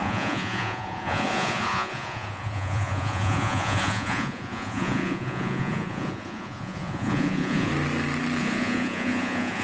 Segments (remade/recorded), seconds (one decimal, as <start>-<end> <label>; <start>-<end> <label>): 0.0-7.7 remade; 7.7-8.4 recorded; 8.4-9.6 remade